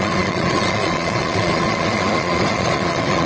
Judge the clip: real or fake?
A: fake